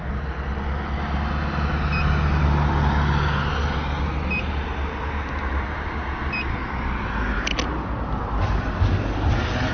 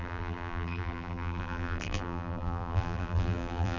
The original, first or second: first